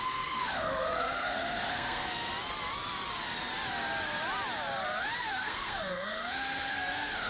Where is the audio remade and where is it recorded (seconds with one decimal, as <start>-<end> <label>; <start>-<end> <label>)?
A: 0.0-2.3 remade; 2.3-5.2 recorded; 5.2-7.3 remade